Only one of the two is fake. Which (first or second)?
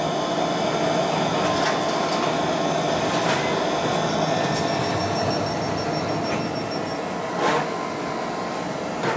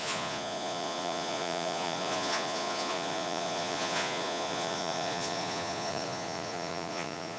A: second